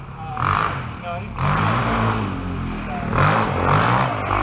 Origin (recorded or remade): recorded